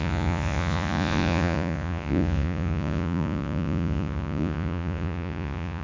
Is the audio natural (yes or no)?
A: no